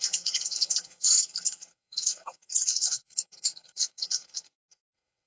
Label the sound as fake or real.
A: fake